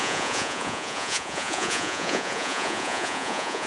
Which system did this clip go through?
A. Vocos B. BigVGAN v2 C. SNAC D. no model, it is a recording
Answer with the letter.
A